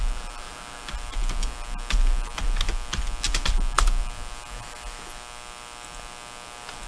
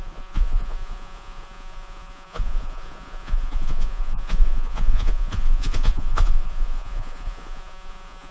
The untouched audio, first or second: first